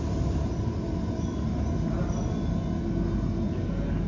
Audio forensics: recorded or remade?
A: recorded